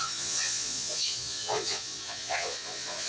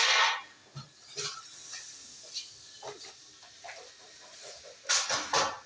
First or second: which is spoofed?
first